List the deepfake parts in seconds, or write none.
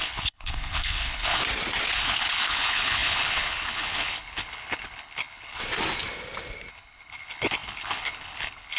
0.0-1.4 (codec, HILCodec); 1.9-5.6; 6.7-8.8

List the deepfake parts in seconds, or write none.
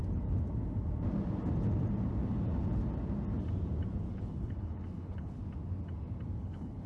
4.1-5.4 (codec, HILCodec); 6.4-6.9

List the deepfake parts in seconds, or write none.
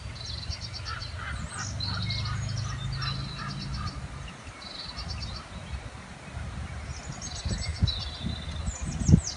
none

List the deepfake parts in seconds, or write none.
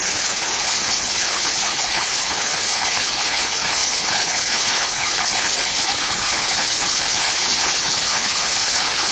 0.0-9.1 (codec, HILCodec)